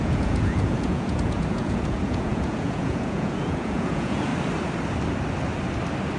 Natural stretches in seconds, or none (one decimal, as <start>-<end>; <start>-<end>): 4.3-6.2